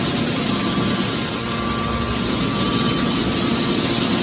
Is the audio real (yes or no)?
yes